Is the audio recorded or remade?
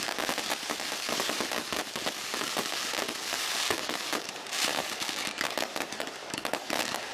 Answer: remade